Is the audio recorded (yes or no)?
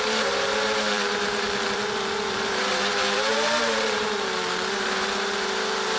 no